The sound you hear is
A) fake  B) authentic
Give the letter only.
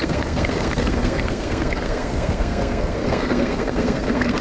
A